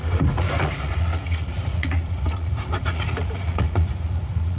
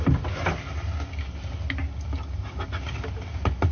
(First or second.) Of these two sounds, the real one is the second